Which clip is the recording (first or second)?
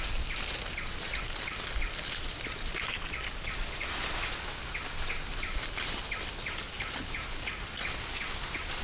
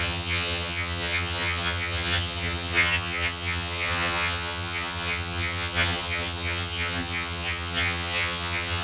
first